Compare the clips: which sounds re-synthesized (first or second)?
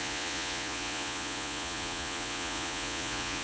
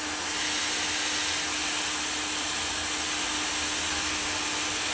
first